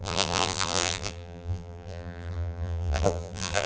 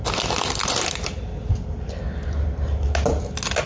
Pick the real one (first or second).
second